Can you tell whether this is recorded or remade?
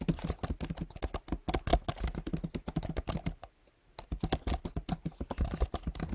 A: recorded